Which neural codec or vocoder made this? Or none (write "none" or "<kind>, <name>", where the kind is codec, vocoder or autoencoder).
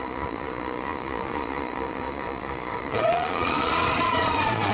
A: vocoder, Vocos